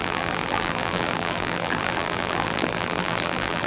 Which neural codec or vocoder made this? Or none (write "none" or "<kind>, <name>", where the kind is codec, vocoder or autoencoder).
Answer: vocoder, BigVGAN v2